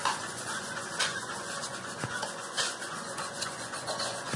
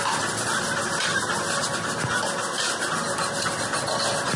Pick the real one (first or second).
second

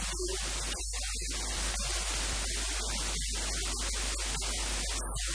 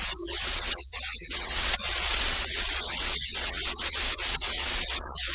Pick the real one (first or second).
first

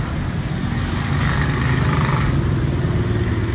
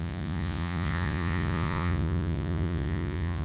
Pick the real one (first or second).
first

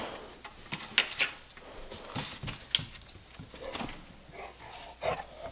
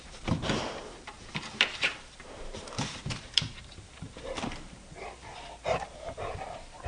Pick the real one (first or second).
first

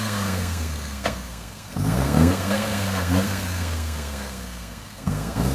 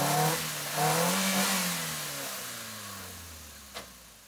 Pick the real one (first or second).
second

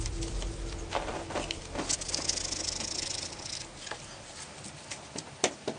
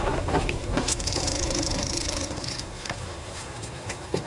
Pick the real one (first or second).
first